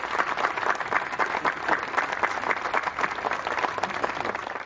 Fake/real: real